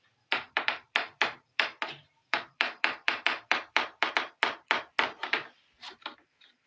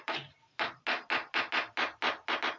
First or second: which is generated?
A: first